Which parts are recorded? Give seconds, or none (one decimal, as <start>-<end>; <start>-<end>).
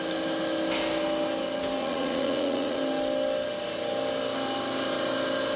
0.0-1.8; 2.8-5.6